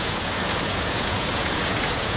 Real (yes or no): no